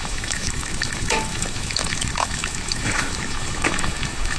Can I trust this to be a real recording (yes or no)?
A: no